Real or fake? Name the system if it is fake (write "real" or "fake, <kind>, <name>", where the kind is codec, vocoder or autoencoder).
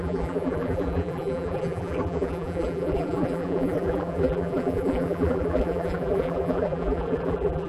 fake, vocoder, BigVGAN v2